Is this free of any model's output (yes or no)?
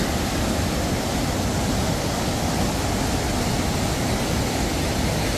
yes